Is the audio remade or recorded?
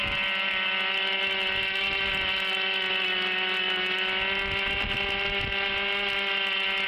recorded